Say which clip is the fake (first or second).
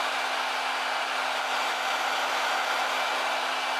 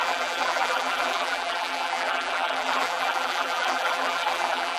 second